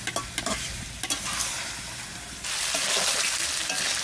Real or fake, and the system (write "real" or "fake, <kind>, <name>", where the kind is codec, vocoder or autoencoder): real